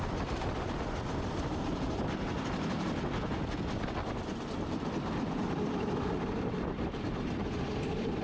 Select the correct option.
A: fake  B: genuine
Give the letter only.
A